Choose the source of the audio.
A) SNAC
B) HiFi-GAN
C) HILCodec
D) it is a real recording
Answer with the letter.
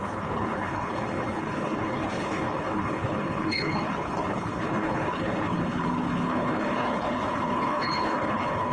C